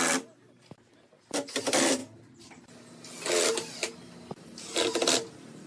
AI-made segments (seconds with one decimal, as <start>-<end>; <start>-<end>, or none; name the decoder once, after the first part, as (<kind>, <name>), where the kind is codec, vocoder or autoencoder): none